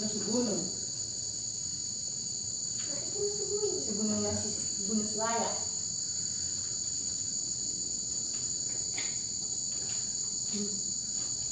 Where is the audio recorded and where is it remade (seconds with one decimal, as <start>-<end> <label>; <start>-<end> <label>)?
0.0-1.6 remade; 1.6-2.1 recorded; 2.1-3.2 remade; 3.2-6.5 recorded; 6.5-11.5 remade